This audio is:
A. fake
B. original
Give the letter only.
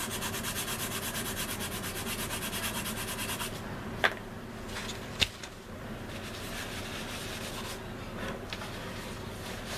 B